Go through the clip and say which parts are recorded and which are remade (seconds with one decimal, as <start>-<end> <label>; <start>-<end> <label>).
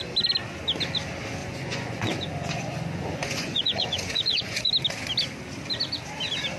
0.0-1.4 recorded; 1.4-4.7 remade; 4.7-6.6 recorded